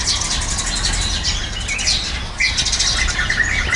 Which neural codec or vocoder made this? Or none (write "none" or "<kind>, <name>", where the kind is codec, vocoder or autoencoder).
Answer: none